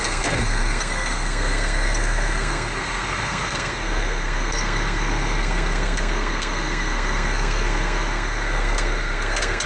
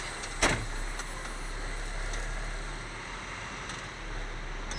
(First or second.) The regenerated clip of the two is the first